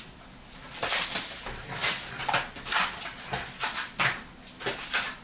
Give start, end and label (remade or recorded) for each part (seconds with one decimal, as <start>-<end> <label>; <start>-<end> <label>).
0.0-5.2 recorded